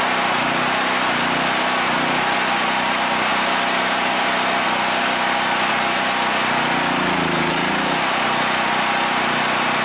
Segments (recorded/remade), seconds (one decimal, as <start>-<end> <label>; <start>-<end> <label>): 0.0-9.8 recorded